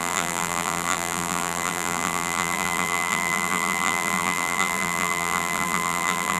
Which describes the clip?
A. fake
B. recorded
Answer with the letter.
A